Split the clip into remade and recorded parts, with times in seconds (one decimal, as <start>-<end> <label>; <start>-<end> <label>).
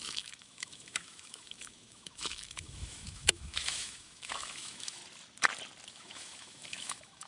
0.0-5.0 remade; 5.0-5.9 recorded; 5.9-7.3 remade